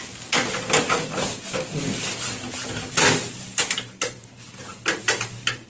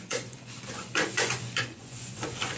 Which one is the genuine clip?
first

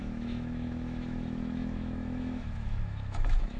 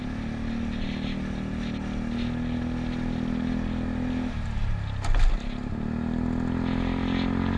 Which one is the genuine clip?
second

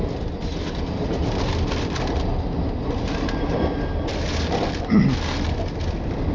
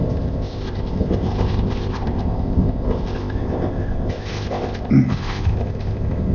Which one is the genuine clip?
first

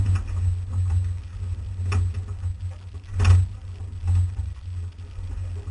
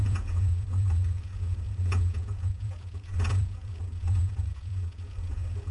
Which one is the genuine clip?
first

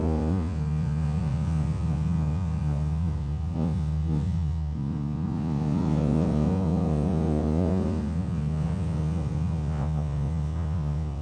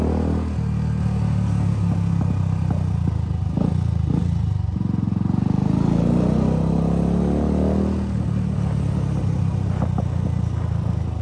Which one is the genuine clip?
second